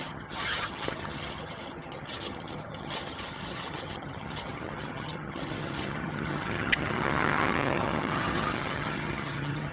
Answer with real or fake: fake